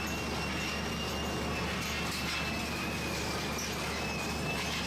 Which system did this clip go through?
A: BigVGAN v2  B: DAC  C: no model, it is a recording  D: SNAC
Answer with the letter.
C